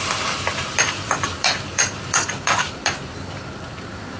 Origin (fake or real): fake